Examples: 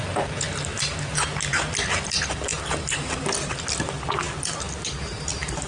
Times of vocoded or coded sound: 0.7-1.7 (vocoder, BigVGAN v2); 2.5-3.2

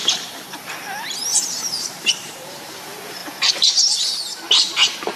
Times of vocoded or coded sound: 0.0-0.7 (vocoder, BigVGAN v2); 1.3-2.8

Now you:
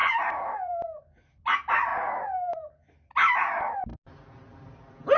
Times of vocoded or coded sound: 0.0-0.7 (vocoder, BigVGAN v2)